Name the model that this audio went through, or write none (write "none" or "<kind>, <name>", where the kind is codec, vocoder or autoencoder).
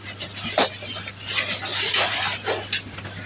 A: none